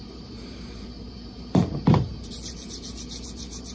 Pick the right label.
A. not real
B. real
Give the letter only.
A